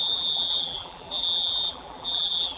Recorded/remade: remade